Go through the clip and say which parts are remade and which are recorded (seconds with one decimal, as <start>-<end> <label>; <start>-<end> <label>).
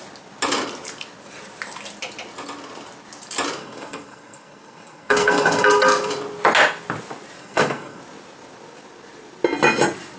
0.0-3.6 recorded; 3.6-6.1 remade; 6.1-7.4 recorded; 7.4-8.0 remade; 8.0-10.2 recorded